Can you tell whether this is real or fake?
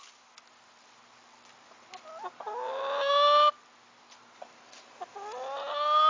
real